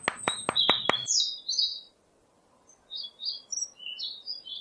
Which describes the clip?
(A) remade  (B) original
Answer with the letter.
B